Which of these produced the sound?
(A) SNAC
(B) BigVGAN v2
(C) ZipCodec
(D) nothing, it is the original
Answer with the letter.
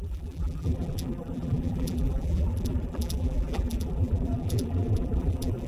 B